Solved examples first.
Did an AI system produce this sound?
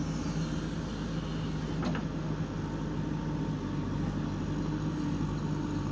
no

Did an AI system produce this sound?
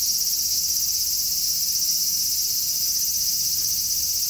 no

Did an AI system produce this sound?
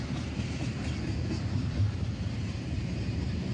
yes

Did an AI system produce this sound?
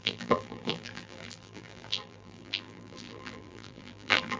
yes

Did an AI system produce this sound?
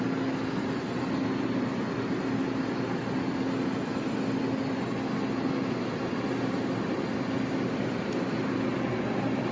no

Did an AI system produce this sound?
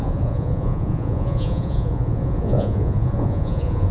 yes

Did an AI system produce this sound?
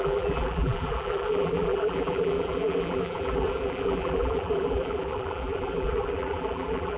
yes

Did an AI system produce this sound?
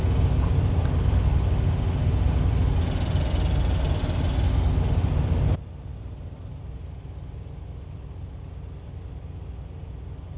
no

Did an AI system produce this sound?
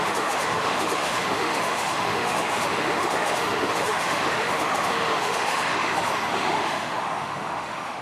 yes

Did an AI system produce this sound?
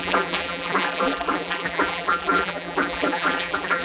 yes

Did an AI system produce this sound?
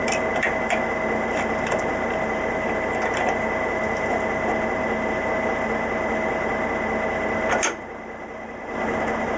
no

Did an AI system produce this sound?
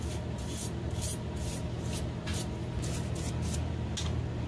no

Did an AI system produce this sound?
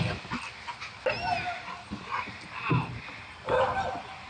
no